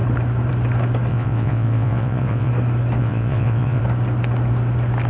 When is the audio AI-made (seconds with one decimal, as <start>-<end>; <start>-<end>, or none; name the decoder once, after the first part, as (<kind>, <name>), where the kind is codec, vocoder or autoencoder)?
1.1-2.5 (vocoder, WaveNeXt); 3.0-3.8